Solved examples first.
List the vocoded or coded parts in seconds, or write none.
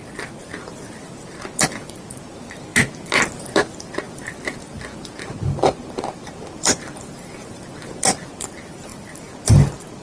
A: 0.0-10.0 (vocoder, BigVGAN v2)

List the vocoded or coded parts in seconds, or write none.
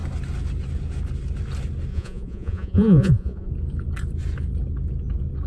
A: 1.9-3.5 (vocoder, Vocos)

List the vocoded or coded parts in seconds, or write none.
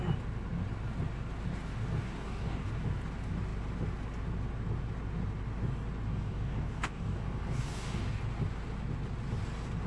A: 2.0-2.7 (codec, DAC); 6.1-8.2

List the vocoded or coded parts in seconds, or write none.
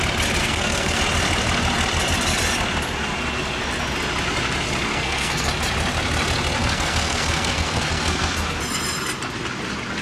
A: 0.4-1.0 (codec, SNAC); 4.9-5.5; 6.6-8.6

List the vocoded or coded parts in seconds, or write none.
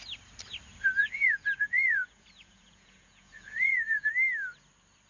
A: 1.0-4.1 (vocoder, Vocos)